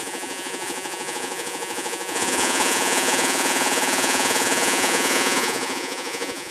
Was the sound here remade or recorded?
remade